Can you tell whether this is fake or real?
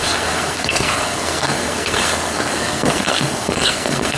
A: fake